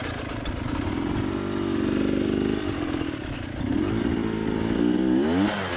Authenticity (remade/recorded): recorded